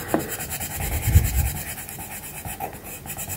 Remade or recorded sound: recorded